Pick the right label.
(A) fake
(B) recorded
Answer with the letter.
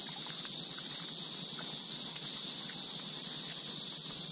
B